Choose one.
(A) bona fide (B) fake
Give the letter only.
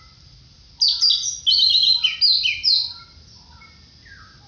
A